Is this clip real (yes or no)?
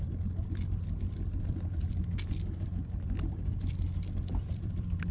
yes